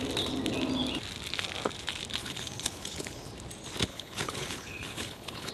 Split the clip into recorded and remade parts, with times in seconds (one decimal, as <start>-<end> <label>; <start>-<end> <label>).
0.0-2.2 recorded; 2.2-3.3 remade; 3.3-3.9 recorded; 3.9-5.5 remade